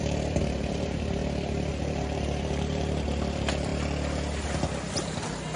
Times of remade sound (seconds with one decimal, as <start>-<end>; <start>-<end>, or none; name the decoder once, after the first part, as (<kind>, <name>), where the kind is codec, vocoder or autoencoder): 0.0-1.2 (vocoder, BigVGAN v2); 1.7-3.7